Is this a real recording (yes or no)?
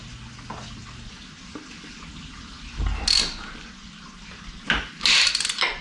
yes